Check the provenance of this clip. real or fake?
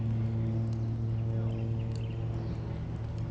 real